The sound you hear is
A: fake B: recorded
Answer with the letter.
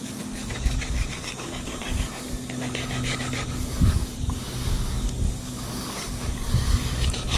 A